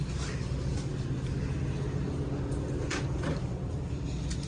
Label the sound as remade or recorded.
recorded